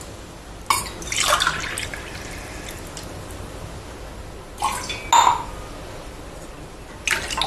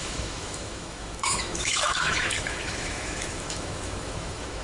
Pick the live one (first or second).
first